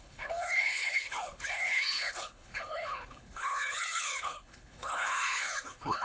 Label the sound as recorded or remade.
remade